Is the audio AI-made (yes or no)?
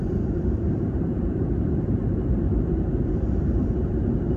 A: yes